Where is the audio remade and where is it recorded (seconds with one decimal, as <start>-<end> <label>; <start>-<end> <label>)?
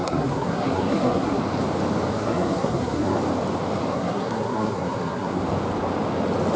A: 0.0-1.4 remade; 1.4-2.1 recorded; 2.1-3.2 remade; 3.2-3.9 recorded; 3.9-5.4 remade; 5.4-6.6 recorded